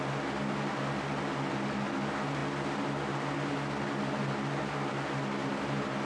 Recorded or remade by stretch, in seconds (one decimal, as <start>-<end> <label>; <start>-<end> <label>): 0.0-6.1 recorded